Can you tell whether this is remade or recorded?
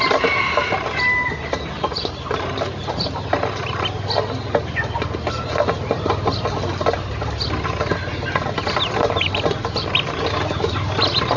recorded